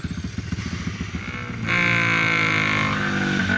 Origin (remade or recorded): recorded